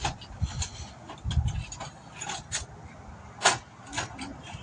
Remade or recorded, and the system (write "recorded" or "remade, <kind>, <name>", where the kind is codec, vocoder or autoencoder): recorded